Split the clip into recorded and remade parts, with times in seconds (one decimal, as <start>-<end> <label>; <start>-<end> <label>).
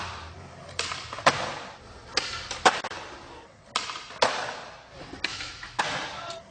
0.0-5.3 recorded; 5.3-5.8 remade; 5.8-6.5 recorded